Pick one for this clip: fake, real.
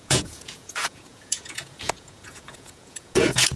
fake